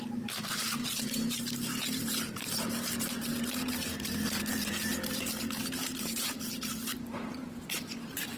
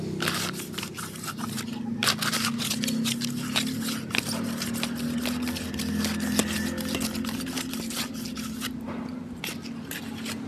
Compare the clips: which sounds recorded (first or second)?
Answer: second